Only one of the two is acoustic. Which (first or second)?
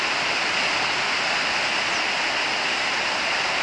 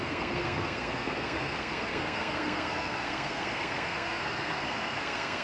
first